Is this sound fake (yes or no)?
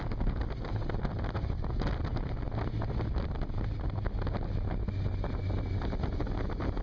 no